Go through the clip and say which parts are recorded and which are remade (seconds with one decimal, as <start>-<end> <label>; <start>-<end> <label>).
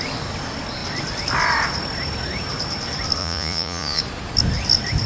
0.0-3.2 recorded; 3.2-4.0 remade; 4.0-5.1 recorded